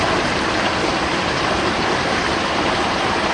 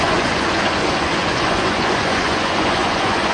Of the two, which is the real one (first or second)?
first